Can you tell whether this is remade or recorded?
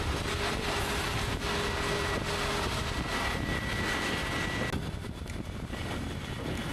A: recorded